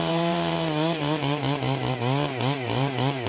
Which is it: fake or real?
fake